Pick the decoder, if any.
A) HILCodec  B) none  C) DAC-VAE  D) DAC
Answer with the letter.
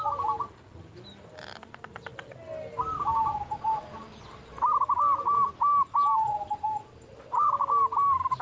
B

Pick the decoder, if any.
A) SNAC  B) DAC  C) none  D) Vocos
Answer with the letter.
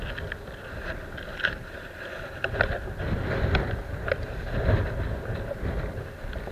C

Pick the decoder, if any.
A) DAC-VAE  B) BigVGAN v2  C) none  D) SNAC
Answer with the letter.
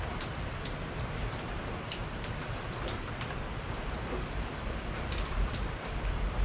B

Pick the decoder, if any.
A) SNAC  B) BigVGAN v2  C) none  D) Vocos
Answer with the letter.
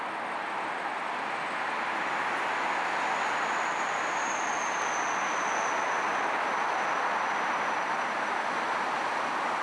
C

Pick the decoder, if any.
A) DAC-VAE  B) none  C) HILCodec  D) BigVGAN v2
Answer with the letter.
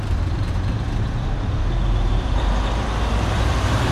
D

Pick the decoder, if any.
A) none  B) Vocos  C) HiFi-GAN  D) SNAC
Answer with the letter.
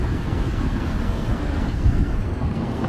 D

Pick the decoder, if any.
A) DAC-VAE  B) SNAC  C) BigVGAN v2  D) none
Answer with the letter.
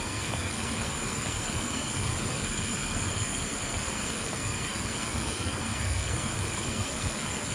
B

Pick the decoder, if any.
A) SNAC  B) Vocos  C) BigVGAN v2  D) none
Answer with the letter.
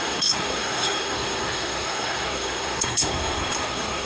A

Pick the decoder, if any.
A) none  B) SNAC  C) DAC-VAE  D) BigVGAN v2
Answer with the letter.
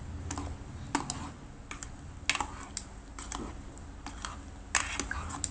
A